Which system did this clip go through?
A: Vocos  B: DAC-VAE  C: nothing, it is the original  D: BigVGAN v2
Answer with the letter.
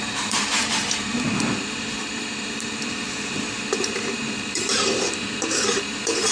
D